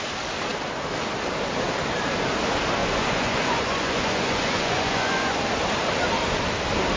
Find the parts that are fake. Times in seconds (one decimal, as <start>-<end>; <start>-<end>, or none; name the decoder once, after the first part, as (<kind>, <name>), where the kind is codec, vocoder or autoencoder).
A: 2.8-5.4 (vocoder, Vocos)